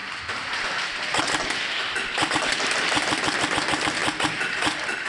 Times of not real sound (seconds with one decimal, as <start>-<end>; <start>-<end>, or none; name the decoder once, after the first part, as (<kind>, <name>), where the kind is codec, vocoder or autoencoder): none